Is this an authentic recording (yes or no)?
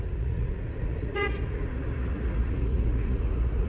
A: no